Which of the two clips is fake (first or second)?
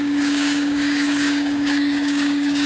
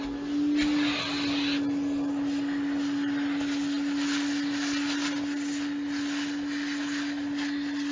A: first